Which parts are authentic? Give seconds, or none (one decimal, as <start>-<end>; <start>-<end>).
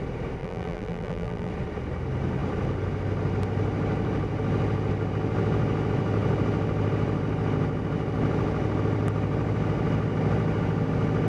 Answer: 0.0-0.4; 1.5-11.3